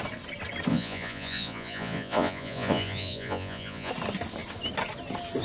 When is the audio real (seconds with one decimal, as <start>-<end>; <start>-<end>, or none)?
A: 0.0-0.7; 3.9-5.4